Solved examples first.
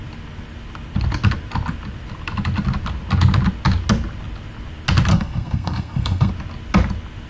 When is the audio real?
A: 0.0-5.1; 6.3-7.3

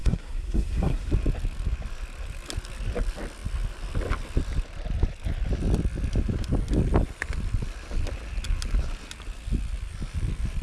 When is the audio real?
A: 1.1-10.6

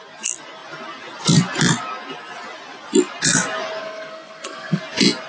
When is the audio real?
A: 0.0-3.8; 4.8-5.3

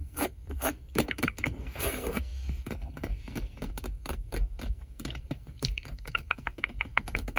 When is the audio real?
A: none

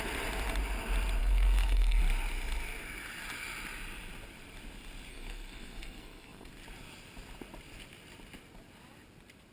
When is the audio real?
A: 0.0-1.2; 2.0-5.1; 6.5-9.5

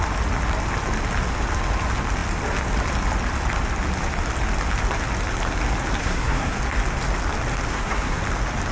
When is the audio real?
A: 0.0-6.0; 6.6-7.7; 8.2-8.7

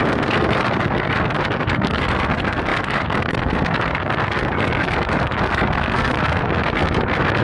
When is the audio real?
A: none